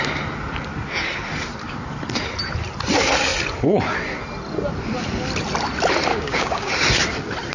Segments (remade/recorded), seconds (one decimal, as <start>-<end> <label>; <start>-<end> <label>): 0.0-6.1 recorded; 6.1-6.7 remade; 6.7-7.5 recorded